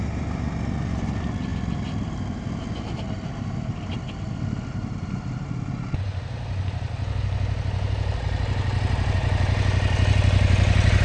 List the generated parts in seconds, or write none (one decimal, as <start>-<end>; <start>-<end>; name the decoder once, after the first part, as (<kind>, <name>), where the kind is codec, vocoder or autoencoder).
none